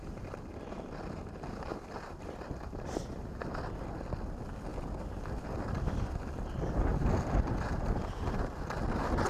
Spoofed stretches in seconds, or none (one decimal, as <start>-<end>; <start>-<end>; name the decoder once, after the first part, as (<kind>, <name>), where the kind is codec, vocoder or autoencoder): 1.7-3.6 (vocoder, BigVGAN v2); 4.7-6.0; 6.9-7.5